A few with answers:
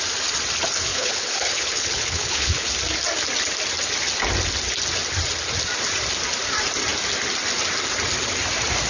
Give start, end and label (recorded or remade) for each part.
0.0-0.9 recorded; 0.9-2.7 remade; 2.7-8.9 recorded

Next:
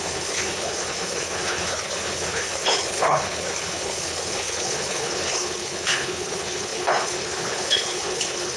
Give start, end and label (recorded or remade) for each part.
0.0-8.6 remade

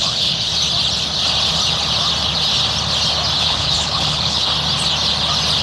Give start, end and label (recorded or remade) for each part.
0.0-0.5 remade; 0.5-3.4 recorded; 3.4-4.5 remade; 4.5-5.6 recorded

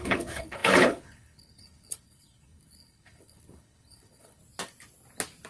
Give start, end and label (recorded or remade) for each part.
0.0-4.4 remade; 4.4-5.5 recorded

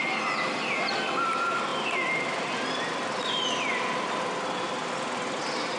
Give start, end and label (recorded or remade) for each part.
0.0-5.8 recorded

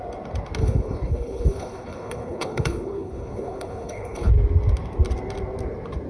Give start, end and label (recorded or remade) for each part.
0.0-0.6 recorded; 0.6-4.3 remade; 4.3-6.1 recorded